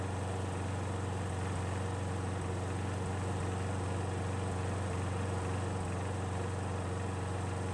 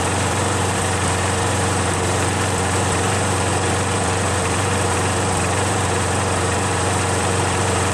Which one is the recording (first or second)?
first